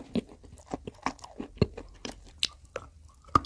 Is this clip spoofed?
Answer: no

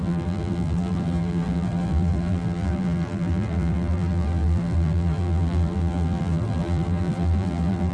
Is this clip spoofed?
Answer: yes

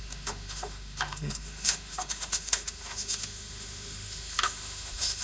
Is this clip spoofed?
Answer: yes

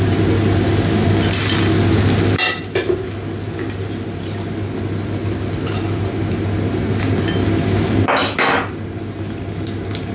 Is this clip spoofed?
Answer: no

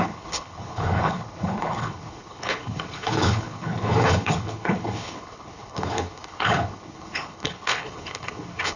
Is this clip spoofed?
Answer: yes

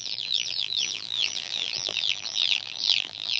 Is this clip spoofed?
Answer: yes